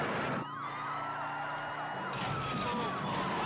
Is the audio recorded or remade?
recorded